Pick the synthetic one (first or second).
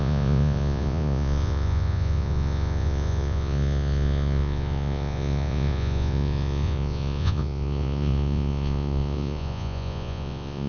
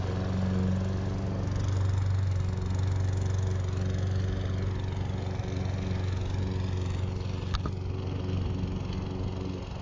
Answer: first